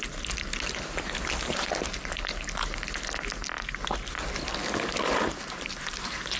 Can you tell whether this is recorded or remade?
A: recorded